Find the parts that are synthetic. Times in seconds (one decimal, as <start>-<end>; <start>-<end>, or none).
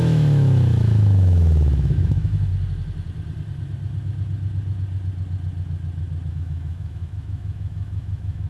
0.0-2.5; 6.3-8.5